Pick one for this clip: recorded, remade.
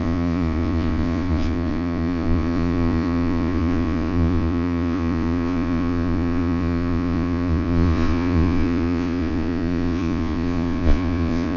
remade